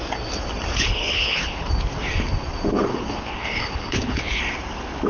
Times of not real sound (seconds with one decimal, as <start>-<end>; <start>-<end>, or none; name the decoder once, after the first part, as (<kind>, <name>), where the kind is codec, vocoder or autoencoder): 0.7-1.7 (codec, HILCodec); 2.9-4.4